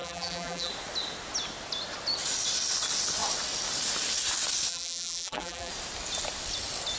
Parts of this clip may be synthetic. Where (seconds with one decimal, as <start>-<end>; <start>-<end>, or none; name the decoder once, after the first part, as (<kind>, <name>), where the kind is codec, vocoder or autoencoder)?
0.0-0.7 (vocoder, BigVGAN v2); 4.7-5.7